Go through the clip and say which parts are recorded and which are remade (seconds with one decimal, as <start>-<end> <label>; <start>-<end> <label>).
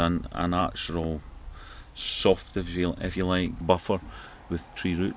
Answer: 0.0-2.5 recorded; 2.5-3.1 remade; 3.1-5.2 recorded